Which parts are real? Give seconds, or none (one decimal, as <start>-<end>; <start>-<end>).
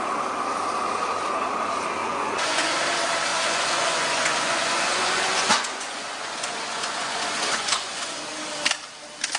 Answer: 0.0-2.0; 2.7-3.3; 8.2-9.4